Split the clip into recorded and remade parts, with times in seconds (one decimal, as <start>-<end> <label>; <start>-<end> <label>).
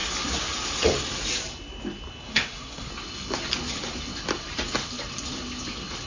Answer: 0.0-2.3 recorded; 2.3-2.9 remade; 2.9-6.1 recorded